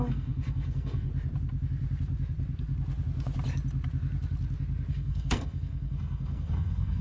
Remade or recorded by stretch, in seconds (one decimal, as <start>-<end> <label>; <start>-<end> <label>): 0.0-1.1 remade; 1.1-4.9 recorded; 4.9-7.0 remade